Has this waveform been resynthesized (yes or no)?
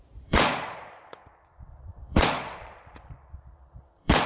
yes